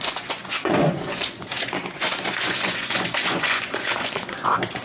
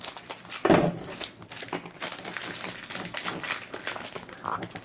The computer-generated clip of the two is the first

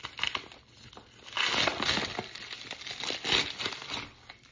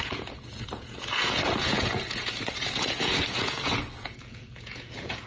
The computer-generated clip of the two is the second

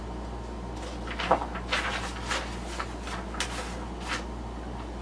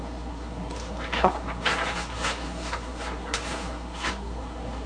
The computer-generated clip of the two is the second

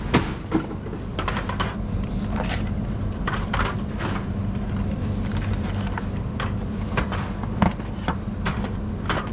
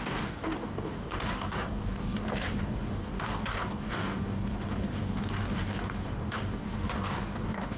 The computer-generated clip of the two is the second